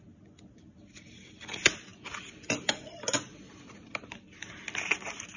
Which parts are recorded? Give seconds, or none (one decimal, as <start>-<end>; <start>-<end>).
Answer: 0.0-5.4